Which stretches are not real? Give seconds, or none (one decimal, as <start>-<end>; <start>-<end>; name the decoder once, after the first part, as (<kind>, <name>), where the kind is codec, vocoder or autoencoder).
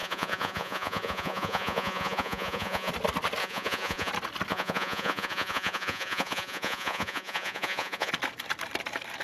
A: 0.0-2.9 (vocoder, Vocos); 3.4-4.1; 4.5-8.1